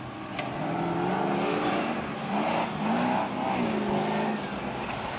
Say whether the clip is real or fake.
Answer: real